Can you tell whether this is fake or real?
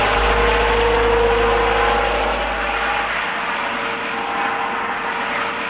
real